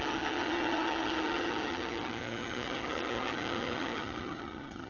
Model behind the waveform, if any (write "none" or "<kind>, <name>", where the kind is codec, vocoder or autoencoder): vocoder, HiFi-GAN